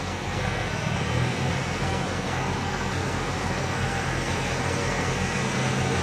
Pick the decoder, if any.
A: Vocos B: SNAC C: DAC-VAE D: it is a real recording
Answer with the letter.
B